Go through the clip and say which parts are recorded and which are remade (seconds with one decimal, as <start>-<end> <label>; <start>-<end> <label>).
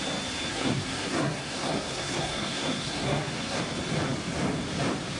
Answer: 0.0-0.5 recorded; 0.5-3.6 remade; 3.6-5.2 recorded